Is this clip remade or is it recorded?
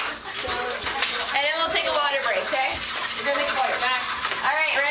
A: recorded